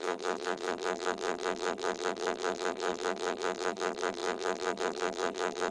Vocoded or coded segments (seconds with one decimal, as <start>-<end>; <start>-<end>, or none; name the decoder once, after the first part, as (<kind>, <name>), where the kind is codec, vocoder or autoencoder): 0.0-5.7 (vocoder, BigVGAN v2)